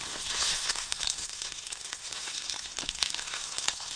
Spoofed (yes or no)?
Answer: yes